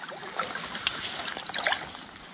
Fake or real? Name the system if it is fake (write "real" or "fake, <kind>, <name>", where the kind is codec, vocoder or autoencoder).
real